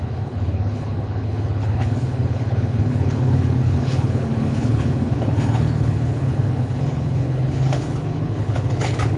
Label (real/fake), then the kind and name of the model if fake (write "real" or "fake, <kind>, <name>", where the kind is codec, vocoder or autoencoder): fake, codec, HILCodec